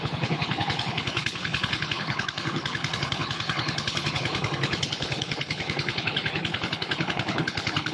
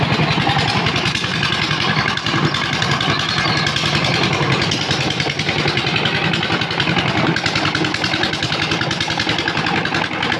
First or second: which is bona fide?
second